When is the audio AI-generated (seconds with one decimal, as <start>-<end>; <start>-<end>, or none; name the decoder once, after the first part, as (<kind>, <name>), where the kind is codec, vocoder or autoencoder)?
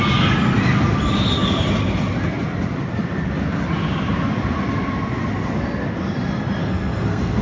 6.6-7.4 (codec, SNAC)